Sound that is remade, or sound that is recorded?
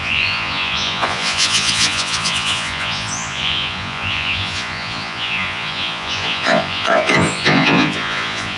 remade